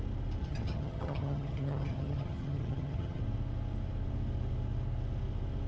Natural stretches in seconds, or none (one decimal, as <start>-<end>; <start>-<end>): 0.0-0.4; 3.2-5.7